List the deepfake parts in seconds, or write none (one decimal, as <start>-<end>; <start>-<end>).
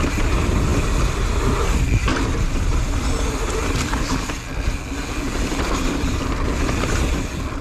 2.1-2.8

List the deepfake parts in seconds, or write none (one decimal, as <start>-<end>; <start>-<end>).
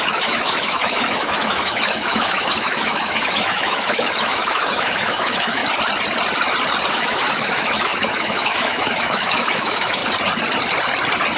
0.0-5.6; 6.9-10.0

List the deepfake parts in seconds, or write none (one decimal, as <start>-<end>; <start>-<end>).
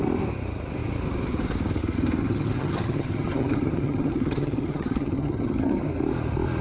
2.2-5.9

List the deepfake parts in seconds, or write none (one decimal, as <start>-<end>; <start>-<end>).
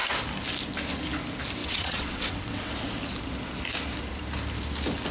1.6-2.7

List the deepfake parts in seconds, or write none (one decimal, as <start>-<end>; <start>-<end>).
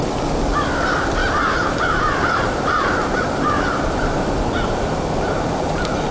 1.2-4.0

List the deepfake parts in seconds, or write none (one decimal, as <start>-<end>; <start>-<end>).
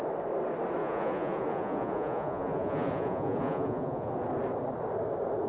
0.8-4.1